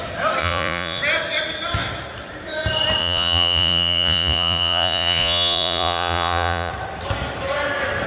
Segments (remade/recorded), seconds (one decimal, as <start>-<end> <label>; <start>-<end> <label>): 0.0-0.4 recorded; 0.4-1.0 remade; 1.0-3.0 recorded; 3.0-6.7 remade; 6.7-8.1 recorded